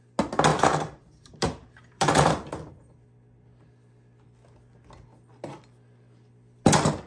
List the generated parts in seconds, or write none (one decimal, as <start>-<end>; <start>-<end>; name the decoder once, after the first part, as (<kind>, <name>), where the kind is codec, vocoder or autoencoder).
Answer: 0.5-2.7 (vocoder, BigVGAN v2)